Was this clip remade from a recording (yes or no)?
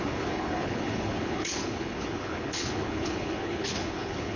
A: yes